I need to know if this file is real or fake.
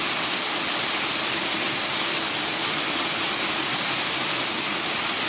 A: real